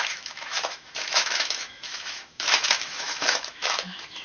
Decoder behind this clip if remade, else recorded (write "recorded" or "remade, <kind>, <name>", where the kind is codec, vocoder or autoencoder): remade, autoencoder, DAC-VAE